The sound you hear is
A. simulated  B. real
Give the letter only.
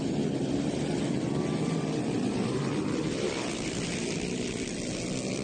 B